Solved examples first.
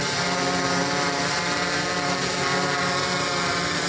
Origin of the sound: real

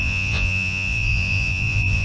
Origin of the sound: fake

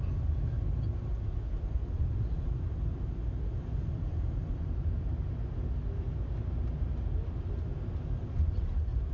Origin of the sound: real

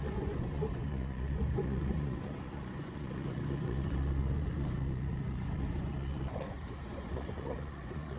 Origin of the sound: fake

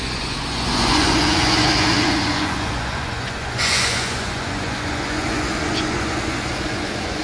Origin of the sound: fake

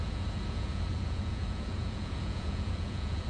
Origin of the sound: fake